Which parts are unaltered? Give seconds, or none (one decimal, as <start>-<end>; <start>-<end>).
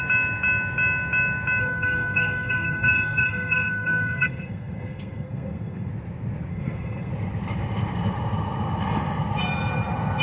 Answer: 0.0-1.6; 5.9-6.5; 7.1-10.2